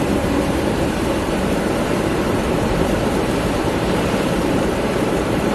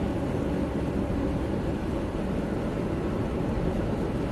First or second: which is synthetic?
first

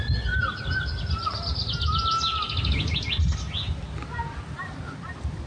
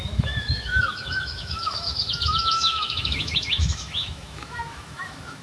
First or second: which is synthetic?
second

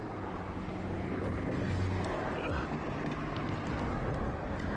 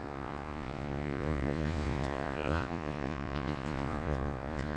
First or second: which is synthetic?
second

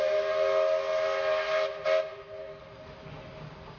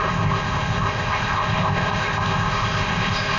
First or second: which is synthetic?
second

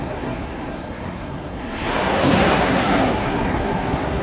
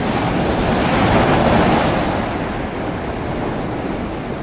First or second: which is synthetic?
first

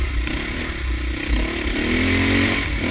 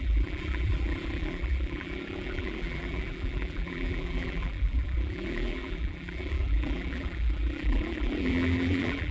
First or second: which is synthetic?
second